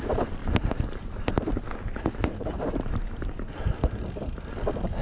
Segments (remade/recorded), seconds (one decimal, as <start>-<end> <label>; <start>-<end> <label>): 0.0-0.4 recorded; 0.4-1.2 remade; 1.2-2.2 recorded; 2.2-3.8 remade; 3.8-5.0 recorded